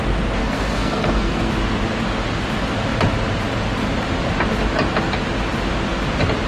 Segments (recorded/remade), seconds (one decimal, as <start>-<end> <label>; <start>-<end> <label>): 0.0-0.4 recorded; 0.4-1.5 remade; 1.5-6.5 recorded